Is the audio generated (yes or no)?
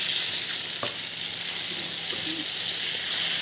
no